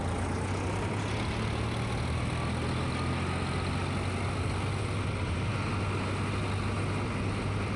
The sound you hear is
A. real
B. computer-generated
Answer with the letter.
A